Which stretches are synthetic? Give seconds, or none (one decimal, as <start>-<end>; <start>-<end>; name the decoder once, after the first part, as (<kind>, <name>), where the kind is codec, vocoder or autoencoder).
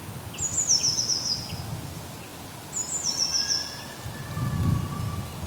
none